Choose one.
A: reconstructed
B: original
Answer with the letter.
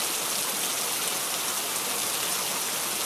B